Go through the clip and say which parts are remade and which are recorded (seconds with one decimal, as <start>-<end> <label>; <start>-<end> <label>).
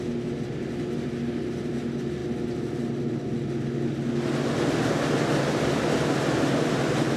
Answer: 0.0-7.2 recorded